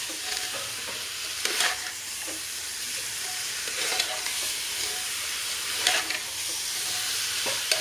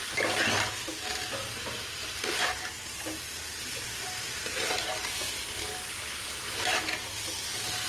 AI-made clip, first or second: first